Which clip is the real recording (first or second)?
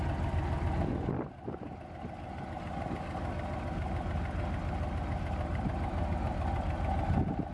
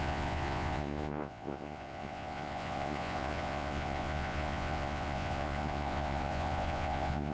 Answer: first